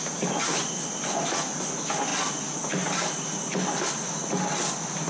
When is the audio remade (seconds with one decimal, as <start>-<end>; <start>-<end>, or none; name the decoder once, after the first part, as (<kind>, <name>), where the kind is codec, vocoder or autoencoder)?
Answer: none